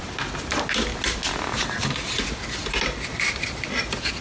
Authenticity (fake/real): real